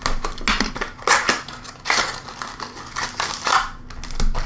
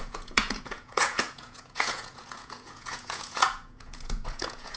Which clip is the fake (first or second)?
second